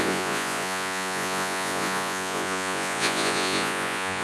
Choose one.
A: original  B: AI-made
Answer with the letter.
B